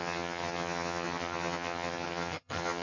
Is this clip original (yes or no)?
no